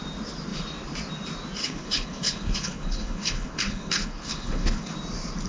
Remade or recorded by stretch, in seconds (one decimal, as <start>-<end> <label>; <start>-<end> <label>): 0.0-1.6 recorded; 1.6-4.9 remade; 4.9-5.5 recorded